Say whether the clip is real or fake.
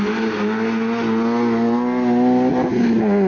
real